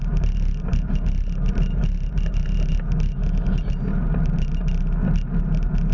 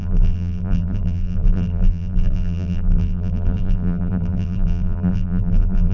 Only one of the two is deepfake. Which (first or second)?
second